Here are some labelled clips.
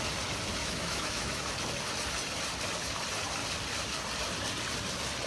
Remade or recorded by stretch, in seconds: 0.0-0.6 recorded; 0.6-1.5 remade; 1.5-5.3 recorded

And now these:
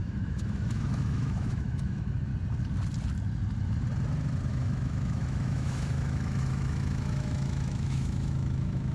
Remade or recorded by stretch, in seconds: 0.0-2.3 remade; 2.3-4.5 recorded; 4.5-8.9 remade